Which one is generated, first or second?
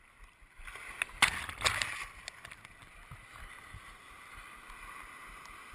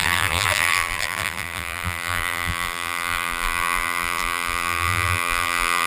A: second